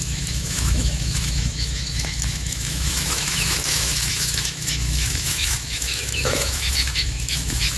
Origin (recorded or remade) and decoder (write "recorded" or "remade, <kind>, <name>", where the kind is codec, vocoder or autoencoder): remade, autoencoder, DAC-VAE